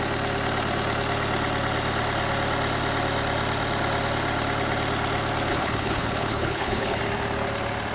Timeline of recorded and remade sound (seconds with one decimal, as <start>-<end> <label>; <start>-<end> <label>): 0.0-5.5 recorded; 5.5-7.0 remade; 7.0-7.9 recorded